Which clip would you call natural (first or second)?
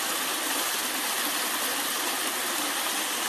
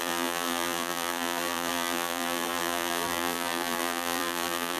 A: first